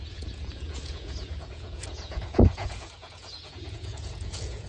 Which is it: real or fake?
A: fake